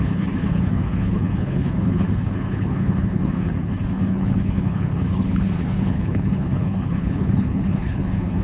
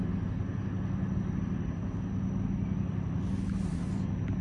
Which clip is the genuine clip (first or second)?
second